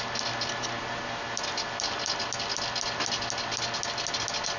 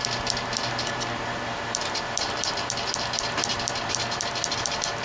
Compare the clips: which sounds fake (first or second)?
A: second